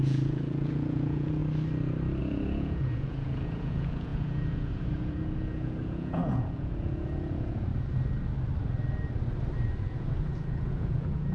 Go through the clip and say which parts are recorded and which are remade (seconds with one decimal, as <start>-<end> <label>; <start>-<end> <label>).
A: 0.0-1.4 remade; 1.4-2.2 recorded; 2.2-7.7 remade; 7.7-9.8 recorded; 9.8-11.3 remade